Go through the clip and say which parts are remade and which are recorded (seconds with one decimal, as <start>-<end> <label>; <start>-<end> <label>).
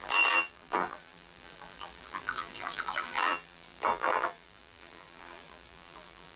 0.0-6.4 remade